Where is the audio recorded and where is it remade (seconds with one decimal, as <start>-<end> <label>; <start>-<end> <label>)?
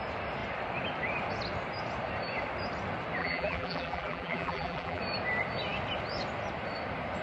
0.0-3.2 recorded; 3.2-5.0 remade; 5.0-7.2 recorded